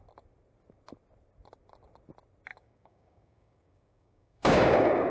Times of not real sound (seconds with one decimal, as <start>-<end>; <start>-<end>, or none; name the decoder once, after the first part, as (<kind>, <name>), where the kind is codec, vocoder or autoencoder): 2.5-5.1 (codec, DAC)